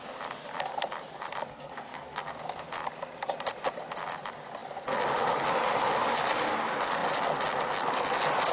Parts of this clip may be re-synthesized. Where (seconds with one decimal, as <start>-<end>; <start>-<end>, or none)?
1.5-2.3